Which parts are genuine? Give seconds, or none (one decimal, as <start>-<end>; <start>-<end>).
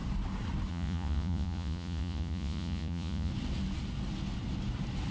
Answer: 0.0-0.7; 3.3-5.1